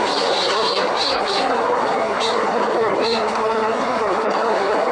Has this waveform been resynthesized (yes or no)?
yes